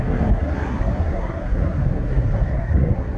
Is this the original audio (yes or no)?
no